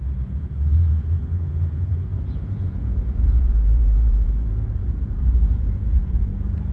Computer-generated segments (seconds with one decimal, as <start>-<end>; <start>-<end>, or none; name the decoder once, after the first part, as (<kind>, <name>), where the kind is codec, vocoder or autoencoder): 0.0-6.7 (vocoder, Vocos)